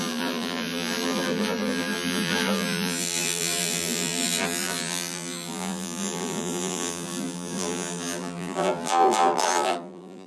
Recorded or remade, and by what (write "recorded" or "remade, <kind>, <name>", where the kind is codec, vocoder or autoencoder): remade, vocoder, BigVGAN v2